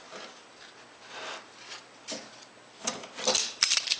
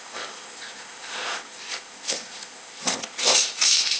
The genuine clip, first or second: first